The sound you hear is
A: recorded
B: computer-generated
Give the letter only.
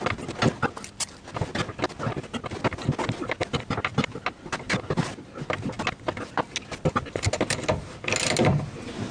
A